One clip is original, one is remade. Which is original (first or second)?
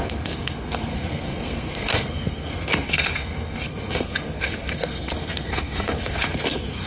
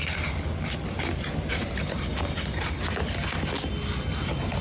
second